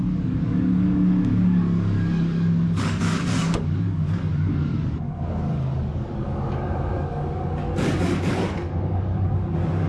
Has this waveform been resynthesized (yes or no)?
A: yes